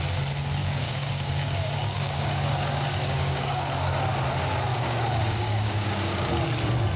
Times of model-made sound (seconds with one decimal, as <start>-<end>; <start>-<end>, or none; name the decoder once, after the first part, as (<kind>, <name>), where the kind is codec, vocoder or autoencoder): 0.6-3.9 (codec, DAC); 4.7-6.3